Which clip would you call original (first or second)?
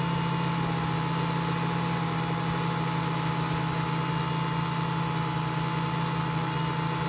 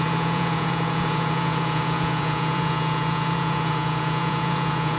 first